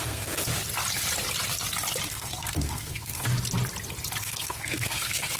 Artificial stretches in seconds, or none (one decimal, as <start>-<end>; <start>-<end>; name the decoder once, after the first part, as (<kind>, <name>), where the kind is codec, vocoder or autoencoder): 0.0-0.5 (codec, SNAC); 2.1-3.3; 4.2-5.4